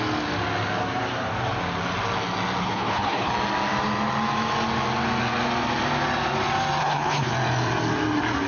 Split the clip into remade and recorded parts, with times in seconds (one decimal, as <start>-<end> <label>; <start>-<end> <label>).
0.0-2.6 recorded; 2.6-3.3 remade; 3.3-6.8 recorded; 6.8-7.3 remade; 7.3-8.5 recorded